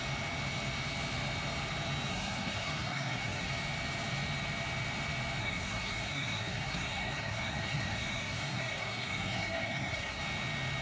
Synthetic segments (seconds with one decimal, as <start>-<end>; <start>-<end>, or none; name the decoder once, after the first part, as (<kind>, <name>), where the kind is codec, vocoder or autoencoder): 2.1-3.5 (codec, SNAC); 5.4-10.2